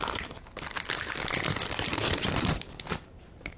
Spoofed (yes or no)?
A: no